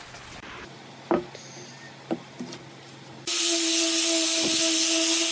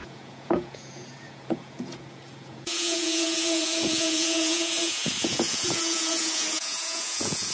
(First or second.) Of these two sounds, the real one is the first